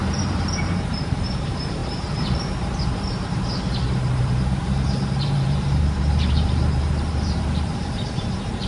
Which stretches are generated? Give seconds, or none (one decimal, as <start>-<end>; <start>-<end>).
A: 0.0-8.7